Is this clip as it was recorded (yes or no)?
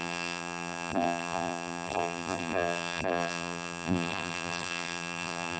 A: no